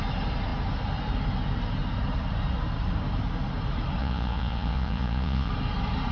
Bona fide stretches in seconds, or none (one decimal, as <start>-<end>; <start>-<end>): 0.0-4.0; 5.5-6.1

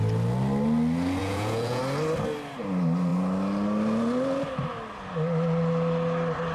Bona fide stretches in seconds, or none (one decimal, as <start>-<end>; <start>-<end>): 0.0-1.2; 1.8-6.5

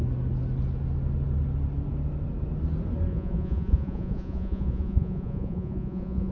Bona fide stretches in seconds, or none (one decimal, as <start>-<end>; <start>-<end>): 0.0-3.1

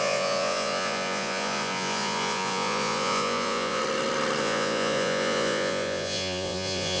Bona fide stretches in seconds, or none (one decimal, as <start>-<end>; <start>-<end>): 3.8-4.4

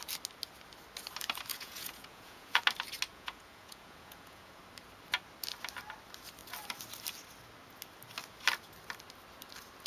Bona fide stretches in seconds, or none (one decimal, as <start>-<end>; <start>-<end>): 0.0-1.5; 2.6-3.1; 4.6-9.9

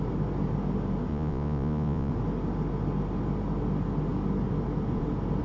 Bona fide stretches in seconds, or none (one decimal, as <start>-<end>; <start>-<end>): 0.0-1.1; 2.1-5.4

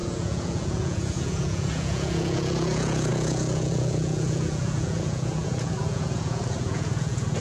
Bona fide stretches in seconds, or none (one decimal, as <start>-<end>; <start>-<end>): none